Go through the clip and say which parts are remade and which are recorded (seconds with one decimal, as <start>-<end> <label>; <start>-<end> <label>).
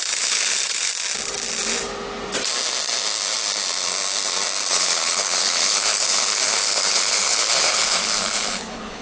0.0-0.9 remade; 0.9-4.7 recorded; 4.7-9.0 remade